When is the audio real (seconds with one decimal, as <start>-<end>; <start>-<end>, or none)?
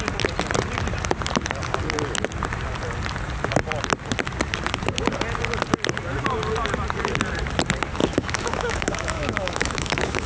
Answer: 0.0-8.0